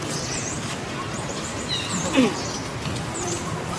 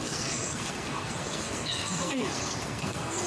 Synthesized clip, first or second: second